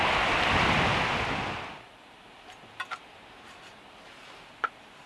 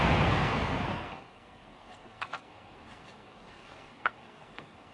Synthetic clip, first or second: second